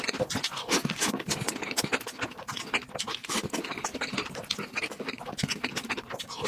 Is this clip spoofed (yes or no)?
no